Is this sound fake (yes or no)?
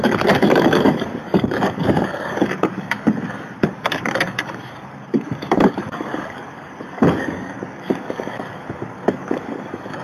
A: yes